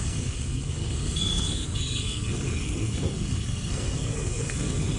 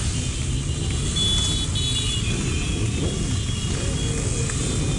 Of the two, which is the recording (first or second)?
second